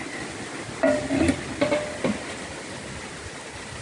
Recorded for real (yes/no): yes